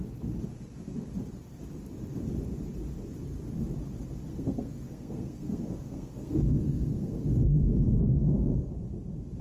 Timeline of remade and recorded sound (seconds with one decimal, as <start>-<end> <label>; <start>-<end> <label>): 0.0-4.3 recorded; 4.3-8.7 remade; 8.7-9.4 recorded